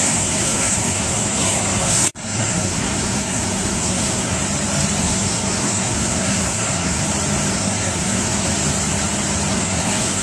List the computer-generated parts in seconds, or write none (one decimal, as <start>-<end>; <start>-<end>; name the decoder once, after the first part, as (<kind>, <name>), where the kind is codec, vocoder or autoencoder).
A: 0.0-4.4 (codec, SNAC); 5.0-7.0; 7.5-8.5; 9.5-10.2